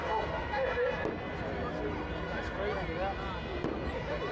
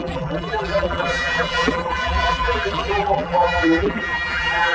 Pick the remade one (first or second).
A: second